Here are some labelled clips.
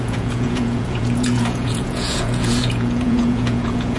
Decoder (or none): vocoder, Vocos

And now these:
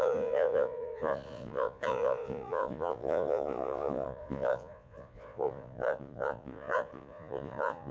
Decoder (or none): vocoder, Vocos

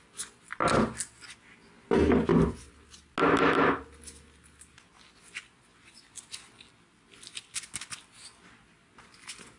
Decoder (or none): none